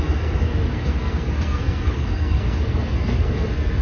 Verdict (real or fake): fake